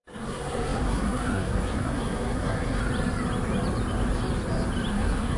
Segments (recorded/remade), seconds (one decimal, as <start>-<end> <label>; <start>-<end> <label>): 0.0-2.8 remade; 2.8-4.9 recorded; 4.9-5.4 remade